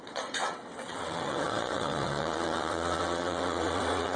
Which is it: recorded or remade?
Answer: remade